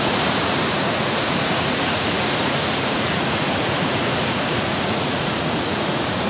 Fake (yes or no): yes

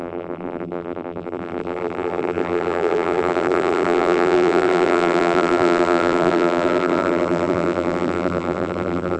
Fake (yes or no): yes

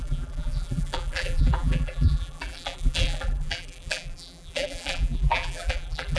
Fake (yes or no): yes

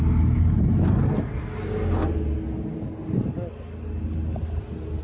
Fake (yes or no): no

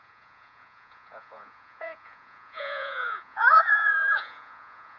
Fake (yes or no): yes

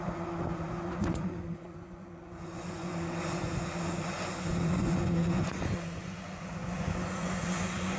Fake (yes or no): yes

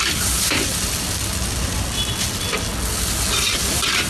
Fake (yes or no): no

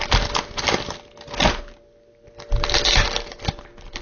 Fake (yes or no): no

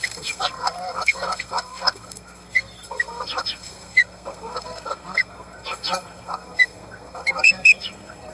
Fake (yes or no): yes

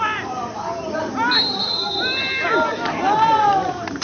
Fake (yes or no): no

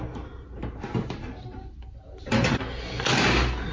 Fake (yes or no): no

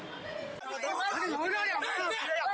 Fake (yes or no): no